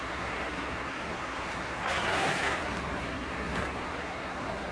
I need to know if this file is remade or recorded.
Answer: remade